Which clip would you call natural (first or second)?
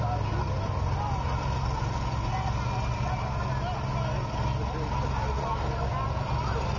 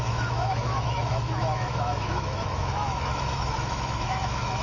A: first